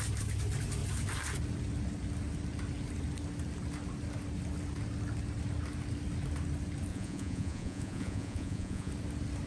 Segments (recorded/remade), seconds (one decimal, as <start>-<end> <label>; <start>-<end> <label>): 0.0-6.9 recorded; 6.9-8.9 remade; 8.9-9.5 recorded